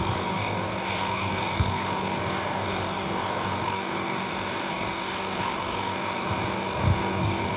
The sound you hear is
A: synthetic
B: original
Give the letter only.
A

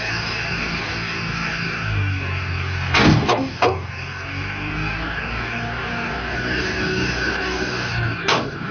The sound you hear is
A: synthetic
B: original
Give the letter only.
A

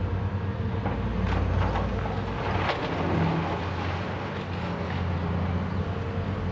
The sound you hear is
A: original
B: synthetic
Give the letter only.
A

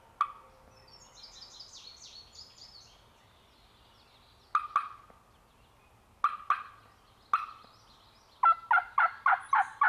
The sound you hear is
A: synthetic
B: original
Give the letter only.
B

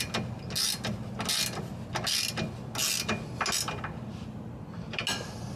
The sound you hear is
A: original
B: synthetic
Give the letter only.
A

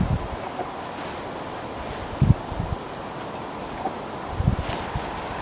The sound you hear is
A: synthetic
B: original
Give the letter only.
B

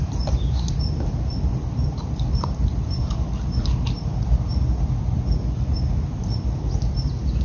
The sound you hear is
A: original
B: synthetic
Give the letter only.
A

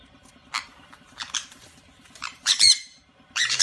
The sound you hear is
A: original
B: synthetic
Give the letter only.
B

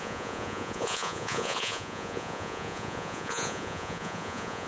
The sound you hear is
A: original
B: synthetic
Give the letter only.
B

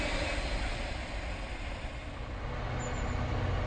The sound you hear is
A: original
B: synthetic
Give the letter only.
A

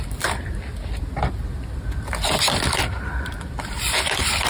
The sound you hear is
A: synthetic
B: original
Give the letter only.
A